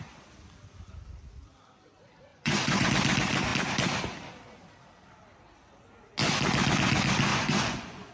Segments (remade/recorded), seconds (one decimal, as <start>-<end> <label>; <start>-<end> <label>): 0.0-2.3 recorded; 2.3-2.9 remade; 2.9-7.3 recorded; 7.3-8.1 remade